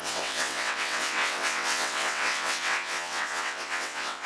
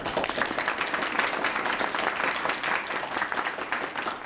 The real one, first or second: second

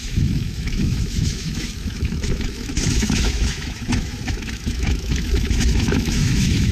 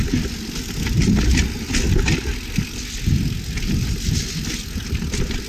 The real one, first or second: second